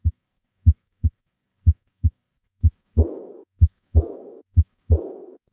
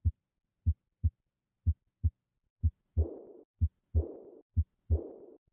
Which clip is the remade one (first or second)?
first